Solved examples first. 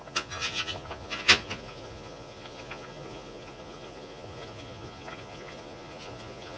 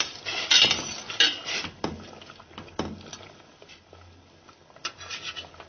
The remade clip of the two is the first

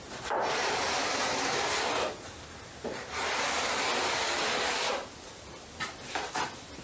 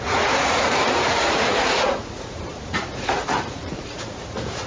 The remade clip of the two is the second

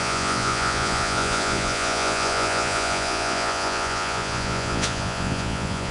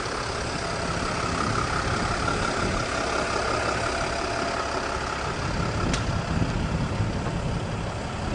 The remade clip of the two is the first